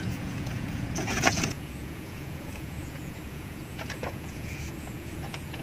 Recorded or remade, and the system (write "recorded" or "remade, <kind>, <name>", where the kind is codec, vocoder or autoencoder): remade, vocoder, Vocos